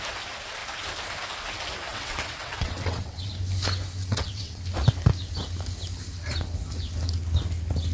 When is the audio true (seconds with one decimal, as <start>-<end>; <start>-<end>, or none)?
0.0-1.9; 3.3-4.0; 4.6-7.9